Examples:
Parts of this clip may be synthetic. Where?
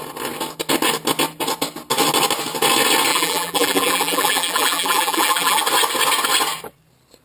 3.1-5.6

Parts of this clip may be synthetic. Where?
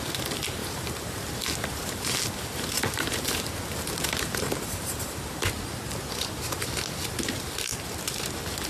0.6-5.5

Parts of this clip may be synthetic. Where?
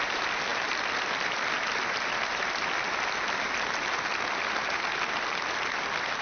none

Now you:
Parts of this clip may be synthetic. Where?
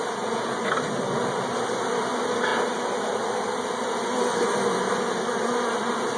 none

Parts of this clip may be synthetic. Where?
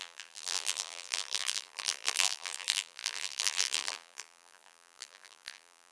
0.0-5.9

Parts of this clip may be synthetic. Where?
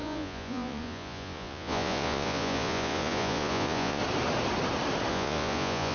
0.0-4.0; 5.1-5.9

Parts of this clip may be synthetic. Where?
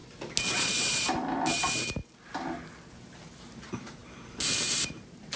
0.5-2.0; 2.9-5.4